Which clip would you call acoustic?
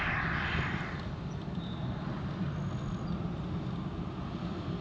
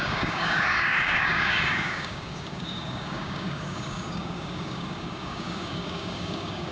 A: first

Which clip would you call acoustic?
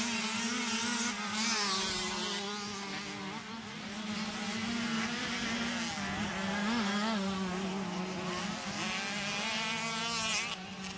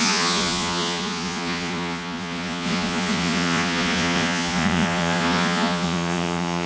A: first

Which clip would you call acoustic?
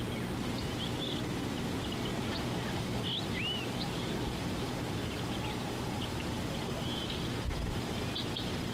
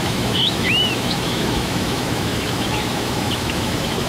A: first